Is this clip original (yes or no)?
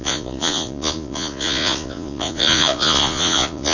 no